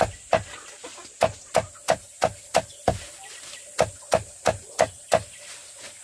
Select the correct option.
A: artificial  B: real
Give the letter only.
B